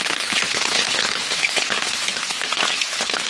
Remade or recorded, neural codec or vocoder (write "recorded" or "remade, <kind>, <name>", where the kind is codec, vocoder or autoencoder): remade, codec, HILCodec